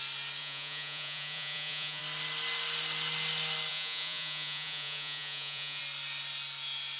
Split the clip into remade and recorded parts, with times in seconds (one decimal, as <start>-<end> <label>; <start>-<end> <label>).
0.0-0.4 recorded; 0.4-2.0 remade; 2.0-3.7 recorded; 3.7-5.8 remade; 5.8-7.0 recorded